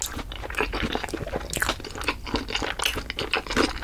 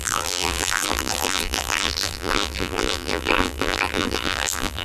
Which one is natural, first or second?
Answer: first